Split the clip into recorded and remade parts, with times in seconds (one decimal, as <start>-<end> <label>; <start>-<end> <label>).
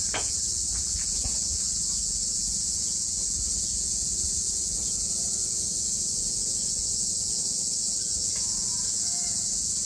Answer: 0.0-9.9 remade